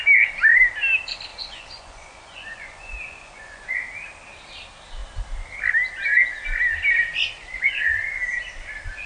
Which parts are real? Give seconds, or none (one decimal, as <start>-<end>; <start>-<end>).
0.0-1.3; 3.9-7.4; 8.0-9.1